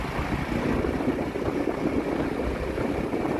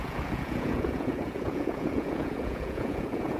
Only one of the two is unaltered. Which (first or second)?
first